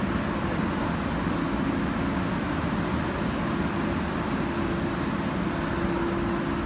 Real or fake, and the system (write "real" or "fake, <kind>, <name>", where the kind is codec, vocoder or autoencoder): real